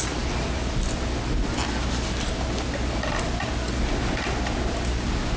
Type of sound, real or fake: real